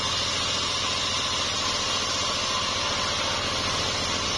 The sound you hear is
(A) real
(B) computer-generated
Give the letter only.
A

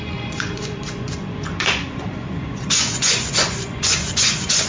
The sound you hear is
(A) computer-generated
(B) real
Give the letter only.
A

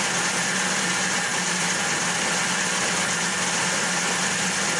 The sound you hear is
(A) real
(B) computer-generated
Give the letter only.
A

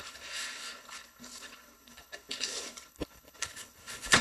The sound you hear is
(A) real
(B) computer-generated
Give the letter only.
B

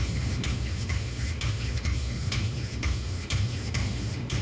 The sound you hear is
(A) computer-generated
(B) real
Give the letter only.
A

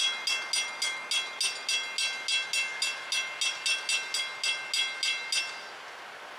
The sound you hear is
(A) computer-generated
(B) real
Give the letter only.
B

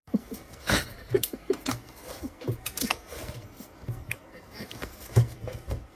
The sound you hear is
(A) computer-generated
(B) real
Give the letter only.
A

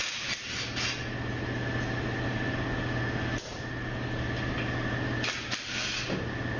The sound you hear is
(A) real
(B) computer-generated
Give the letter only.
A